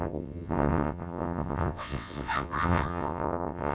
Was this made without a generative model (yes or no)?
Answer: no